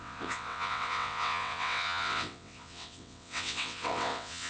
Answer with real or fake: fake